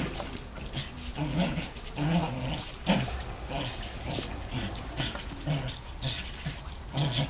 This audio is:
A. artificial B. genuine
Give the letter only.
B